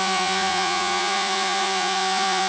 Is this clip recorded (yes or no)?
no